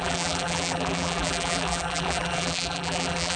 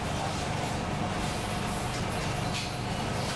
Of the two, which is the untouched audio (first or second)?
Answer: second